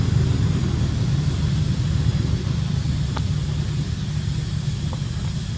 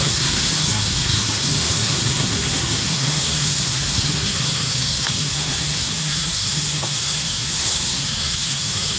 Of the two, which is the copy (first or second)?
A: second